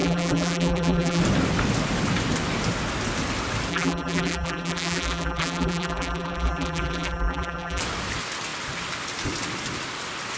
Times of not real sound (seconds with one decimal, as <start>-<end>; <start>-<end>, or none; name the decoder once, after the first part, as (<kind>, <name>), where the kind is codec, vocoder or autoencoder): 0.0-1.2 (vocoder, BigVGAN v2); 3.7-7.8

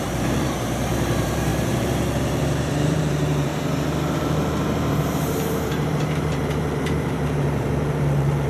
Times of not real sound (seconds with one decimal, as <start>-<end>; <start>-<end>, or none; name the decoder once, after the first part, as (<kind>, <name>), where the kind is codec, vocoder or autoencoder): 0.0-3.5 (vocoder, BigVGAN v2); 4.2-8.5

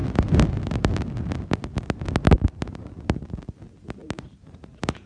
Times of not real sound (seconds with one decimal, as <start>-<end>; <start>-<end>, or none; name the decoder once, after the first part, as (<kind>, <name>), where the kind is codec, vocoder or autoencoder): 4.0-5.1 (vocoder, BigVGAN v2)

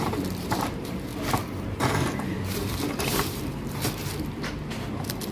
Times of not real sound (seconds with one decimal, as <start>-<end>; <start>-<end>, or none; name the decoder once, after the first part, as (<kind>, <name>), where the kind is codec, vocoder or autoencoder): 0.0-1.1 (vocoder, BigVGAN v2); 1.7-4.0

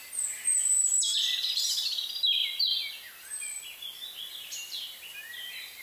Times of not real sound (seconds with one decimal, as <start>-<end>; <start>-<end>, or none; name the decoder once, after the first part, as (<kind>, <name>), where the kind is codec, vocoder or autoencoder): 0.0-1.6 (vocoder, BigVGAN v2); 4.3-5.8

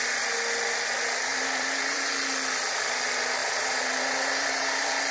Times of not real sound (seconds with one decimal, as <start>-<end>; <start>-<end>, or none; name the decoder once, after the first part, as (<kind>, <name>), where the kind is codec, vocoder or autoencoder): 1.3-2.1 (vocoder, BigVGAN v2); 3.4-5.1

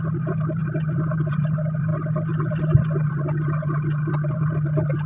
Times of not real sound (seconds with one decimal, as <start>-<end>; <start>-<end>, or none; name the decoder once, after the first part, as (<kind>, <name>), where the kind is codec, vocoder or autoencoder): none

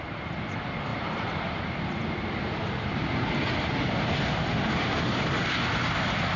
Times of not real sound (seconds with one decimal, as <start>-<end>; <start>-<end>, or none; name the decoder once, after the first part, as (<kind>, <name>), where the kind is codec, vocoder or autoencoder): 0.9-1.8 (vocoder, BigVGAN v2)